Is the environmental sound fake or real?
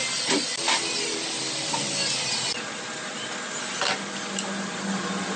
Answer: real